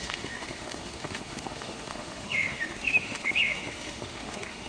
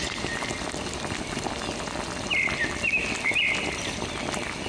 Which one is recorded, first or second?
second